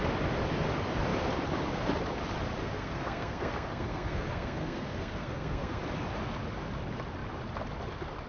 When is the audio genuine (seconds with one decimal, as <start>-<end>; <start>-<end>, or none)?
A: 0.0-2.6; 5.8-8.3